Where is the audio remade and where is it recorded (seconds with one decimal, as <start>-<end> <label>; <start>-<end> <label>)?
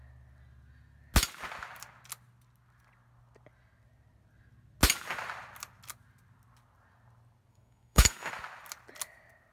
0.0-7.5 recorded; 7.5-8.3 remade; 8.3-9.5 recorded